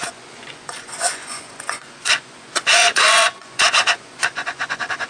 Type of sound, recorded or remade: remade